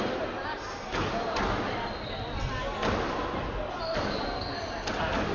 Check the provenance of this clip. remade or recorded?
recorded